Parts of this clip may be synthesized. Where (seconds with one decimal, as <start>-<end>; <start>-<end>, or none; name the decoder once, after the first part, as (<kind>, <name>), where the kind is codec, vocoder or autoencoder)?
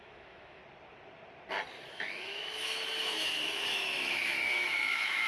0.0-0.6 (autoencoder, DAC-VAE); 1.9-5.3